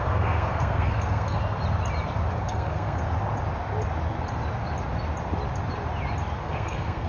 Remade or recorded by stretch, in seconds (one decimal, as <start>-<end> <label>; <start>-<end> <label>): 0.0-1.4 remade; 1.4-2.3 recorded; 2.3-3.0 remade; 3.0-6.4 recorded; 6.4-7.1 remade